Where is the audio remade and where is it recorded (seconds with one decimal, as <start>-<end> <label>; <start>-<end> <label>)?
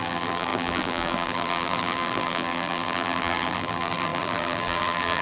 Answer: 0.0-5.2 remade